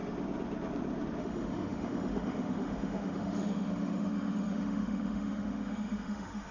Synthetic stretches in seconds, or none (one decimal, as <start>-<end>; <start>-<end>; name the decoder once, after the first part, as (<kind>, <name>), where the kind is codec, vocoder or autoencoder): 1.2-6.5 (autoencoder, DAC-VAE)

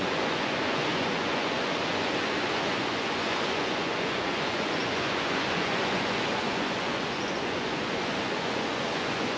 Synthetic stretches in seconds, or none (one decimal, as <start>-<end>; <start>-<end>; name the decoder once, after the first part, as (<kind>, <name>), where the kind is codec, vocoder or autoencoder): 0.0-9.4 (vocoder, Vocos)

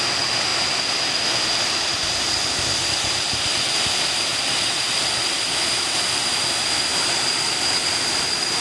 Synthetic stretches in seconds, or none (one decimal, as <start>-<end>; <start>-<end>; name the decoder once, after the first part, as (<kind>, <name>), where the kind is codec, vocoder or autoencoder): none